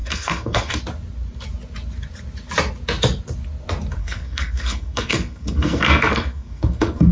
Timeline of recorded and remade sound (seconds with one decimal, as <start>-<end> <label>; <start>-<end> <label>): 0.0-0.8 remade; 0.8-4.0 recorded; 4.0-7.1 remade